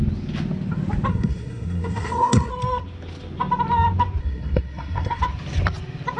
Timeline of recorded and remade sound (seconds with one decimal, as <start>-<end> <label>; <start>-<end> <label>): 0.0-1.1 recorded; 1.1-2.5 remade; 2.5-4.2 recorded; 4.2-5.2 remade; 5.2-6.2 recorded